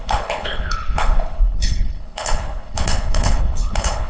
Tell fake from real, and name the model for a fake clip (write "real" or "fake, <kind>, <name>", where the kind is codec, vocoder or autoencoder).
fake, codec, HILCodec